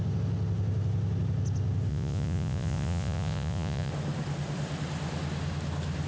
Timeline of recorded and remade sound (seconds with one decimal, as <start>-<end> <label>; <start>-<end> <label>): 0.0-1.9 recorded; 1.9-3.9 remade; 3.9-6.1 recorded